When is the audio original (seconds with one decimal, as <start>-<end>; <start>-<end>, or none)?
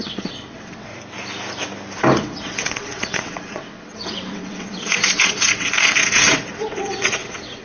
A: 0.9-2.2